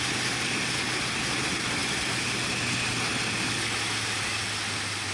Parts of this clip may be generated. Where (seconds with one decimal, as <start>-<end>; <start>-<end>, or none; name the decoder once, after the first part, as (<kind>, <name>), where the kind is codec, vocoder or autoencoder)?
none